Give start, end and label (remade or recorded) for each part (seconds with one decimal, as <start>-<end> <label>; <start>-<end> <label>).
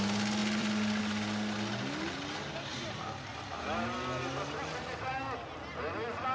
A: 0.0-2.7 recorded; 2.7-3.3 remade; 3.3-6.3 recorded